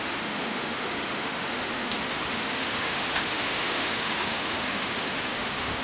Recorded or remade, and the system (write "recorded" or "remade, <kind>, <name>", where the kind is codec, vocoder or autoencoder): remade, autoencoder, DAC-VAE